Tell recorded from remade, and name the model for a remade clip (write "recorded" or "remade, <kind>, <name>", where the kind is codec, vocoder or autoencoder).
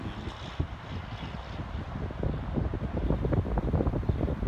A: recorded